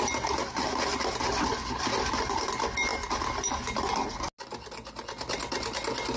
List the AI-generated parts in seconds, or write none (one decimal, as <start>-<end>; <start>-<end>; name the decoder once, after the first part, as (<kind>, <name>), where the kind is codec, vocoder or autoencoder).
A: none